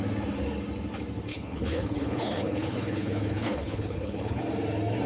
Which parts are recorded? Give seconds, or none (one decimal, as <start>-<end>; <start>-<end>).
0.0-1.3; 4.4-5.1